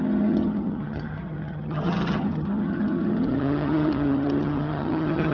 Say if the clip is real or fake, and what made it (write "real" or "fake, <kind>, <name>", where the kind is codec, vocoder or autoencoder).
fake, vocoder, HiFi-GAN